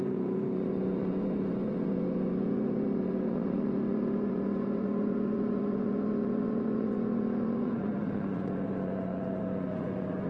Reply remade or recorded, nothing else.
remade